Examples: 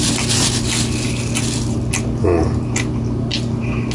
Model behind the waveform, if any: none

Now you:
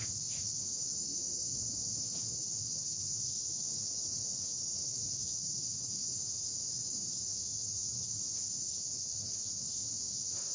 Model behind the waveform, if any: autoencoder, DAC-VAE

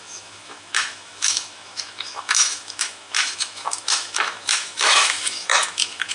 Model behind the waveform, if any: autoencoder, DAC-VAE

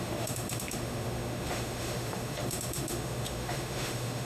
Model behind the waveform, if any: autoencoder, DAC-VAE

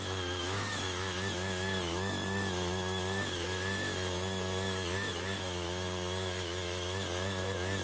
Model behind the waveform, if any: autoencoder, DAC-VAE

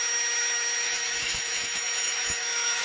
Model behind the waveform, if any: autoencoder, DAC-VAE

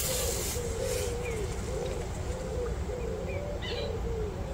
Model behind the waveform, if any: none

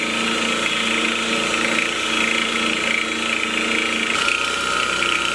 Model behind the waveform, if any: none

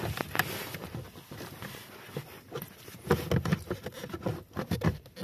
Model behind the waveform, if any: none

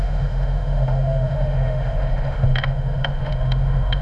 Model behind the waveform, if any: autoencoder, DAC-VAE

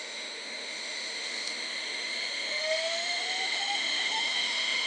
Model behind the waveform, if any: autoencoder, DAC-VAE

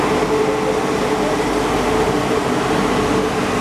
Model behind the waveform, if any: none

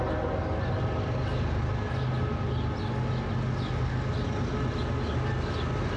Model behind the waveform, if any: none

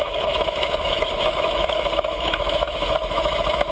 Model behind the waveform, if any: autoencoder, DAC-VAE